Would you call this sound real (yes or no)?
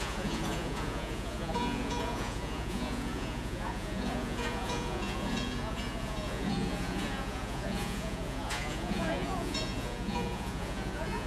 no